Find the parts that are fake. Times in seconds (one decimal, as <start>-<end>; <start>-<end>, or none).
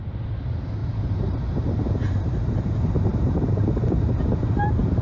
0.8-2.7; 3.1-5.0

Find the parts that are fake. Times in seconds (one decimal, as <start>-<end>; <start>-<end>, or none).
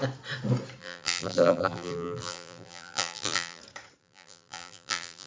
0.8-3.6; 4.0-5.3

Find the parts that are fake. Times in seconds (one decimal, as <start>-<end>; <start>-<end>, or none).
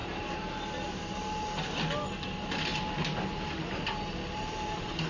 0.0-0.5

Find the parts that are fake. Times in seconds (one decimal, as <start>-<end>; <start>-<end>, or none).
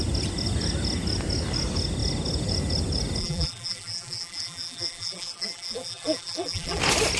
3.2-6.8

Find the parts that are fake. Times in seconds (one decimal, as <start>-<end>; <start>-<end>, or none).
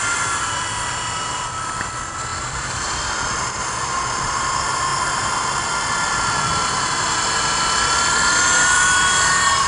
0.0-4.9; 5.9-9.7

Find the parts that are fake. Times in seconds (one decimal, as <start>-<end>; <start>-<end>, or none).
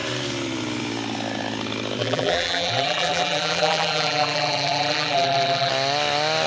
2.0-5.7